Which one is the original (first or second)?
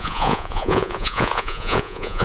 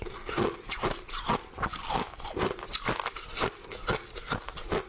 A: second